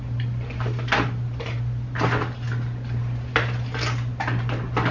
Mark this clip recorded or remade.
recorded